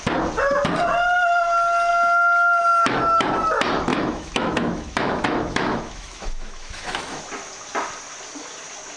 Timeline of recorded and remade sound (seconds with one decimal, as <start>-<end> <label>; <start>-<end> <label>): 0.0-3.9 recorded; 3.9-7.2 remade; 7.2-9.0 recorded